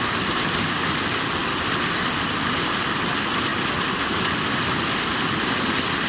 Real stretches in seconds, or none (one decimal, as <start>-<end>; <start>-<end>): 0.0-6.1